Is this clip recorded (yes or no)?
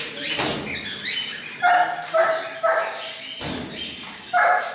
yes